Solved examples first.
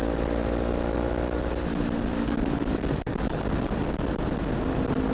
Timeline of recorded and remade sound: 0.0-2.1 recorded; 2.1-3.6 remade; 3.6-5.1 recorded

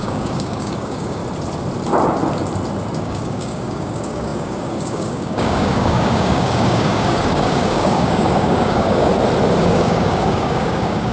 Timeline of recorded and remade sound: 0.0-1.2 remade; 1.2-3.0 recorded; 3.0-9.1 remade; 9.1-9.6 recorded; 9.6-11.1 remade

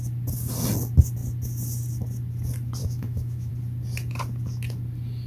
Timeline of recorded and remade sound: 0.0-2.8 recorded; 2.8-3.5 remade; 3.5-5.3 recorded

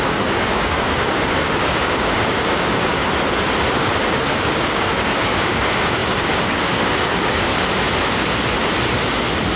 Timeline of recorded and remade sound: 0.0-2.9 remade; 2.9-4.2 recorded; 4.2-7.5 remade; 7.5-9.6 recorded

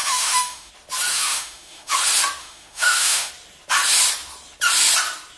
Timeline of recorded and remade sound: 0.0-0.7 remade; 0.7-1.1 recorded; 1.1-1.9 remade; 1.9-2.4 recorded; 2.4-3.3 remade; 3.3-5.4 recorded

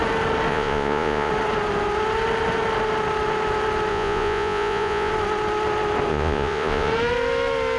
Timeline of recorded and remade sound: 0.0-0.5 recorded; 0.5-1.3 remade; 1.3-3.9 recorded; 3.9-5.1 remade; 5.1-6.1 recorded; 6.1-6.9 remade; 6.9-7.8 recorded

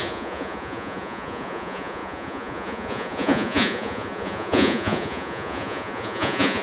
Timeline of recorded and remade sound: 0.0-6.6 remade